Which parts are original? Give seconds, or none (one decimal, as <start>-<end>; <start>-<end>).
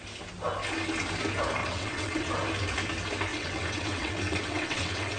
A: 0.0-1.6; 2.3-3.3